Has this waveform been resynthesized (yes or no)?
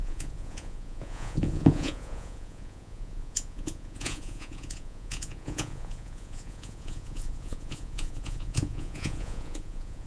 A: yes